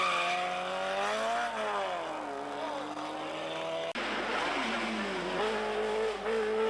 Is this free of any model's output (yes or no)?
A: yes